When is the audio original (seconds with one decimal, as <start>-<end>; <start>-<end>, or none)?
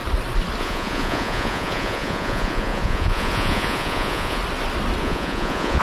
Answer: 0.0-0.6; 4.4-5.0